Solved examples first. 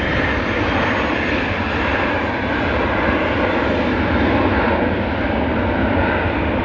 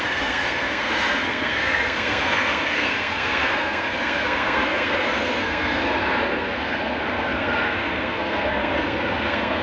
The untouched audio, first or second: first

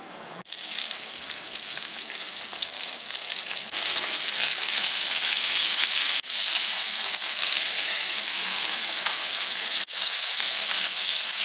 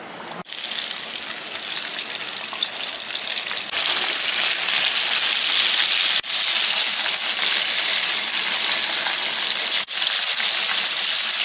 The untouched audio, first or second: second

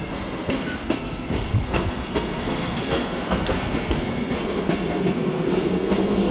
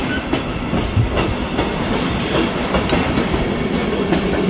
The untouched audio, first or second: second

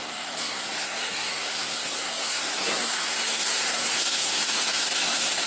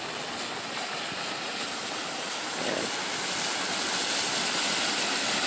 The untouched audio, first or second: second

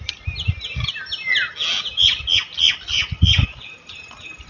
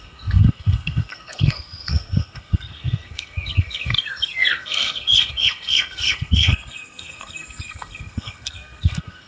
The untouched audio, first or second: first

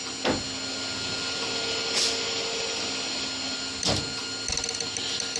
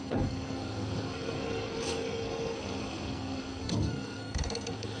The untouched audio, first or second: first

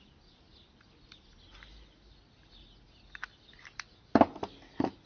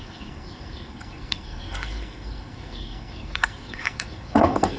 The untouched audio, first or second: first